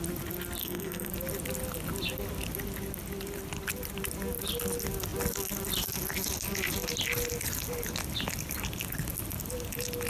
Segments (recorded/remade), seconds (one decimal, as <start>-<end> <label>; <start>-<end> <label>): 0.0-0.6 recorded; 0.6-1.1 remade; 1.1-10.1 recorded